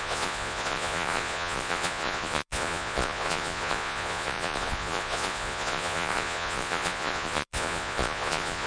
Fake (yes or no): yes